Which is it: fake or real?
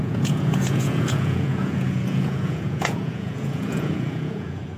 fake